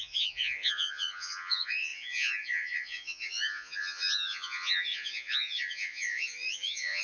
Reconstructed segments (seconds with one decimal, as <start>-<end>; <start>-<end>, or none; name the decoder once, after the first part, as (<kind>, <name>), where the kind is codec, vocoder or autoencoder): 0.0-7.0 (vocoder, Vocos)